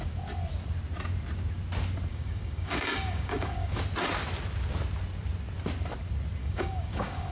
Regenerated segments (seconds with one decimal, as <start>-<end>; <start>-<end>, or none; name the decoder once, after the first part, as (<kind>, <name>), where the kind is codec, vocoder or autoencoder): 2.1-3.8 (codec, DAC); 6.4-7.3